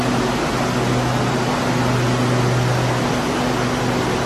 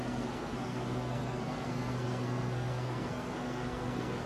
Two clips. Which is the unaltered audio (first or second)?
first